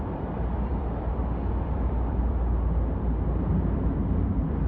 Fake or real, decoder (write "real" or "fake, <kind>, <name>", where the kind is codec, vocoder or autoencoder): fake, vocoder, BigVGAN v2